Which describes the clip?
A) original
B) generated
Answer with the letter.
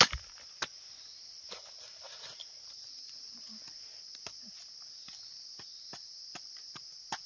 A